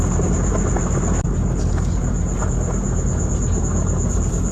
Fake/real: real